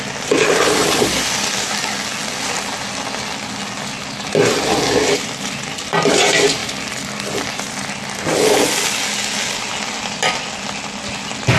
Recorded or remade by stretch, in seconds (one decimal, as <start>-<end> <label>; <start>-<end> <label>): 0.0-11.6 recorded